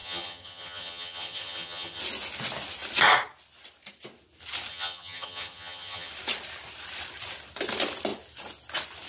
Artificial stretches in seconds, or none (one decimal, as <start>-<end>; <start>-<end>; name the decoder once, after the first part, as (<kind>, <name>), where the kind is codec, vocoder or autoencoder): 0.0-2.0 (vocoder, HiFi-GAN); 4.7-6.1